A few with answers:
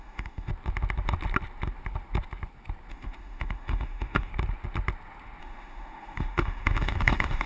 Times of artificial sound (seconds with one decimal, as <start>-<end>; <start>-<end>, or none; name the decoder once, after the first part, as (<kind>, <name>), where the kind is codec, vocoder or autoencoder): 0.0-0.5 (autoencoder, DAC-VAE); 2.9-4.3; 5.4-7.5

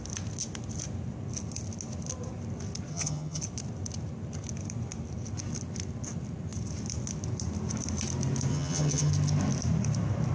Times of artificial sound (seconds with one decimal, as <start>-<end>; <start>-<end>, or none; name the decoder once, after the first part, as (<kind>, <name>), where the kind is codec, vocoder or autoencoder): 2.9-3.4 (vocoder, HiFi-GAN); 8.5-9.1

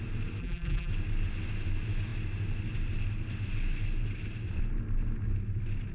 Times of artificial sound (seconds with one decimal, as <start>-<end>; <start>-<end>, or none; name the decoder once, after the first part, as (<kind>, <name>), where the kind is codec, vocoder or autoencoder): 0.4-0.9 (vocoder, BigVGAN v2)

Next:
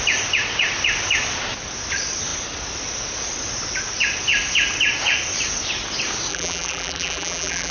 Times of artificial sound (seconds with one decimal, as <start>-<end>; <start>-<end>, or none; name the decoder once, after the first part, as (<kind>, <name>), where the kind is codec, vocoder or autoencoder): 6.3-7.7 (vocoder, BigVGAN v2)

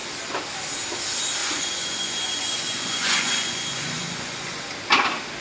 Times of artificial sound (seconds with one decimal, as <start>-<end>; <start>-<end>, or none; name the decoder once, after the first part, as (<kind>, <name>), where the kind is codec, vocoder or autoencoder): 1.4-4.6 (vocoder, Vocos)

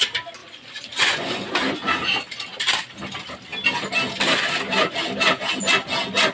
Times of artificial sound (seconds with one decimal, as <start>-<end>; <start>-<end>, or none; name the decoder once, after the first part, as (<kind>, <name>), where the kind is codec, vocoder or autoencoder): 0.4-1.5 (vocoder, Vocos)